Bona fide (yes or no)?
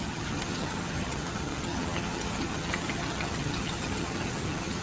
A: no